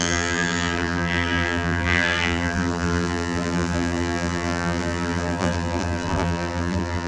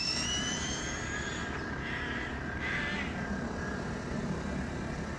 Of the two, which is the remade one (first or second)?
first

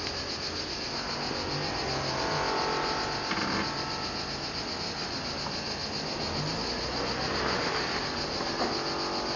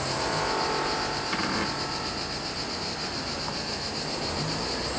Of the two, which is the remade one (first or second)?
second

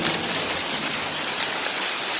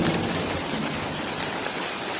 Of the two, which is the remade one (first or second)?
first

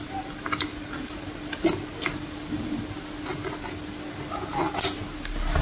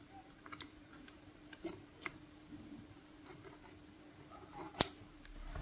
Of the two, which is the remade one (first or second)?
second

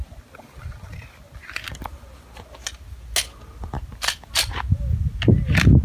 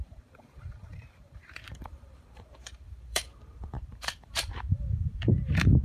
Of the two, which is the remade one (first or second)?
second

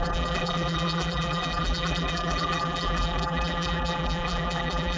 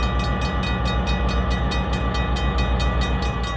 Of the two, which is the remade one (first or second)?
first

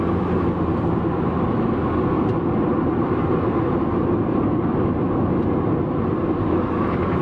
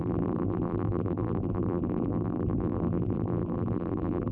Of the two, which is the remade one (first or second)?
second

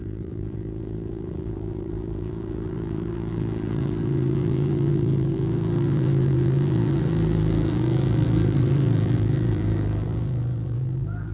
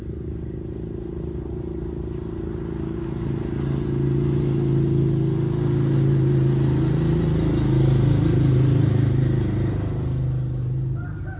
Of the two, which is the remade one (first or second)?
first